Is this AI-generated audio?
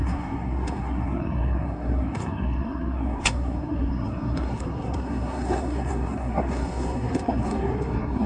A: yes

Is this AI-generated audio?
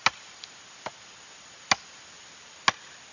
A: no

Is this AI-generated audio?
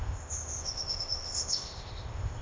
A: yes